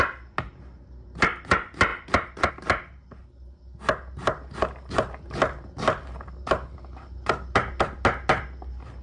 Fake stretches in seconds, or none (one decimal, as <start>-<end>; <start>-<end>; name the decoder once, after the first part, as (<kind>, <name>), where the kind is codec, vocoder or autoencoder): none